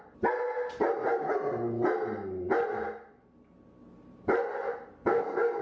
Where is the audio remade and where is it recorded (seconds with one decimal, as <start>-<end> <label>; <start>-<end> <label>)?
0.0-5.1 recorded; 5.1-5.6 remade